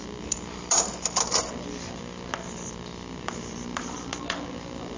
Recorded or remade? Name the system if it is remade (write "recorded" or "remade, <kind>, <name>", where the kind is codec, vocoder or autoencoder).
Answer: recorded